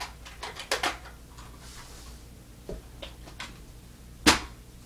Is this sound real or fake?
real